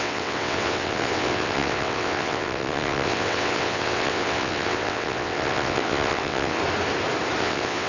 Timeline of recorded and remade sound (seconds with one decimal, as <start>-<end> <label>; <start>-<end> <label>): 0.0-6.6 remade; 6.6-7.4 recorded; 7.4-7.9 remade